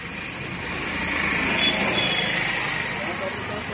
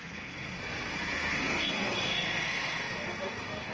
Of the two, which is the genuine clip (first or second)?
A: first